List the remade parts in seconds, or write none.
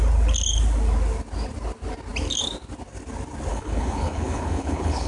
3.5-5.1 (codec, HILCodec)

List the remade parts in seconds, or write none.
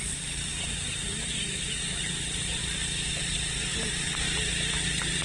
none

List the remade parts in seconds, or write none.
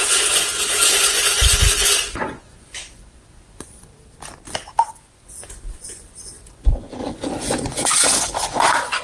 0.0-3.9 (vocoder, Vocos); 4.9-9.0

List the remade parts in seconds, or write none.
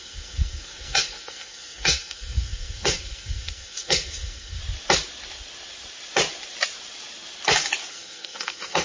0.0-4.6 (codec, SNAC); 7.9-8.8